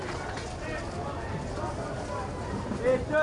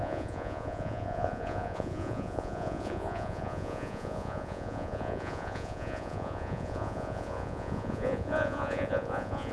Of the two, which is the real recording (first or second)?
first